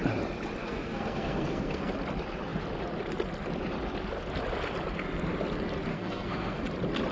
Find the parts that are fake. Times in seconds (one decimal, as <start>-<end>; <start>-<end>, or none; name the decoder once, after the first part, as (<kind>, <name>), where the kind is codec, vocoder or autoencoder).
0.6-1.9 (codec, SNAC); 5.9-6.6